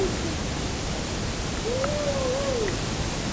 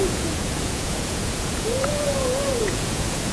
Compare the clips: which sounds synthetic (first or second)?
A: second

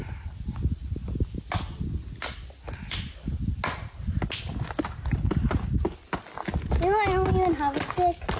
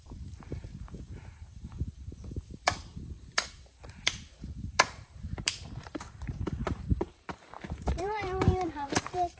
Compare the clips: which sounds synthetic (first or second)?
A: second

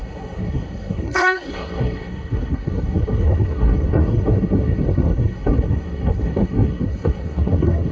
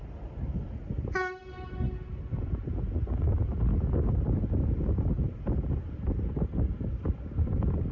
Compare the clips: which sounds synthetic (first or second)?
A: first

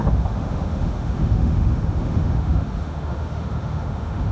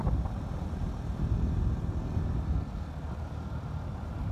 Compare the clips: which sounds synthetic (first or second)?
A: first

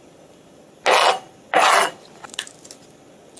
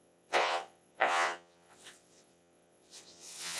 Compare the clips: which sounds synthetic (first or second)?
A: second